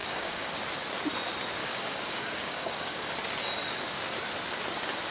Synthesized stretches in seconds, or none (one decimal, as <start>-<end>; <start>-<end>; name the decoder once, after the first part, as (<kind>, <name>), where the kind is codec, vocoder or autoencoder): 0.0-0.5 (codec, DAC); 1.6-3.1